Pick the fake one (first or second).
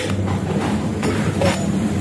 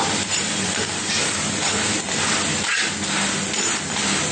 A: first